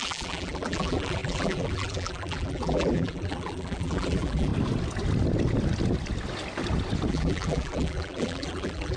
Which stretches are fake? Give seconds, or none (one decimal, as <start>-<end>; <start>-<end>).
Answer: 0.0-4.5; 7.1-9.0